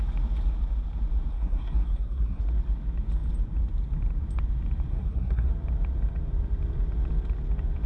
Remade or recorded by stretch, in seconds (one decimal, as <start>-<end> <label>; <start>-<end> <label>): 0.0-1.3 recorded; 1.3-2.4 remade; 2.4-4.9 recorded; 4.9-5.5 remade; 5.5-7.9 recorded